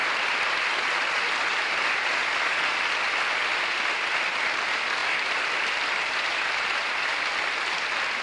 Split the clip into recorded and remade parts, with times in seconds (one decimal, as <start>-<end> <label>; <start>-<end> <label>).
0.0-3.9 remade; 3.9-5.0 recorded; 5.0-7.1 remade; 7.1-8.2 recorded